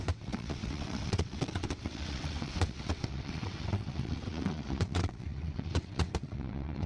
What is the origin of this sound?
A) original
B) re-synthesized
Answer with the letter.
B